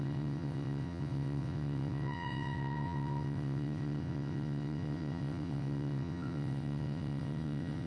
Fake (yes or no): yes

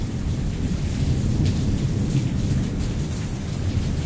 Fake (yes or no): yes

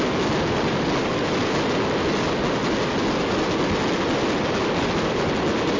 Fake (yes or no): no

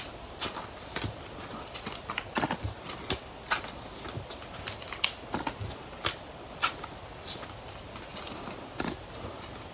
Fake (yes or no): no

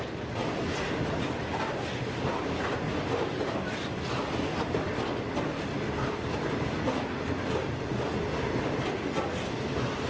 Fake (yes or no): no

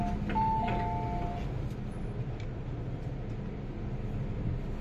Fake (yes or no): no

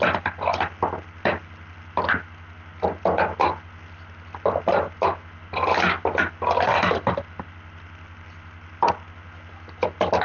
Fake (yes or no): no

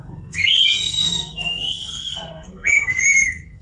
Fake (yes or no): yes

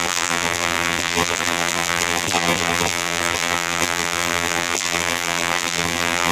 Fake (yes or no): yes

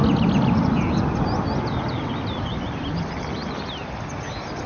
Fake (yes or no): no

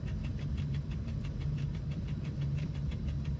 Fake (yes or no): yes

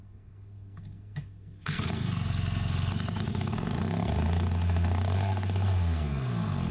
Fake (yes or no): yes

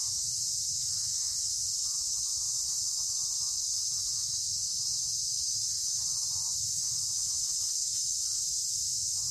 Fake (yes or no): yes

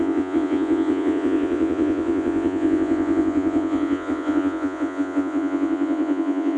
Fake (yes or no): yes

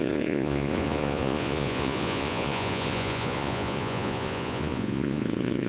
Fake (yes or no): yes